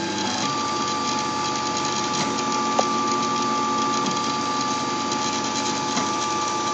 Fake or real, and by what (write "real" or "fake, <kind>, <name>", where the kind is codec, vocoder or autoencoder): real